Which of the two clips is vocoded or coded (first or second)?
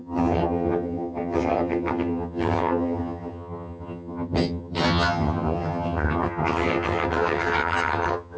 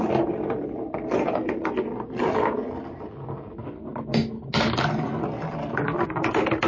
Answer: first